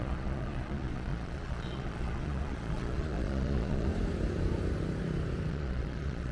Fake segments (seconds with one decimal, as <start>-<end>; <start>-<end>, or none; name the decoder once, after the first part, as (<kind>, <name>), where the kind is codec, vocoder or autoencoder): 0.0-3.9 (vocoder, Vocos); 5.5-6.3